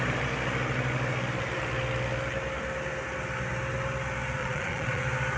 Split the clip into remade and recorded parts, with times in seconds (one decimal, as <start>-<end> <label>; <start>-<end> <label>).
0.0-4.4 recorded; 4.4-5.0 remade; 5.0-5.4 recorded